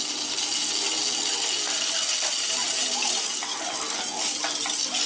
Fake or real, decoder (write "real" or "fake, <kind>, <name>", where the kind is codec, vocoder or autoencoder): real